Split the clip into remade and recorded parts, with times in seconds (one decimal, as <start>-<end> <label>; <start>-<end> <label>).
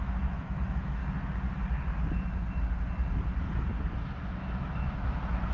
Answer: 0.0-1.0 remade; 1.0-4.3 recorded; 4.3-5.5 remade